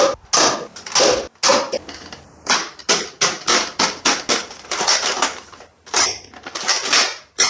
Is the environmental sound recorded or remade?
recorded